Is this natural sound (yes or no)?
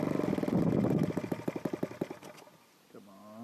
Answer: yes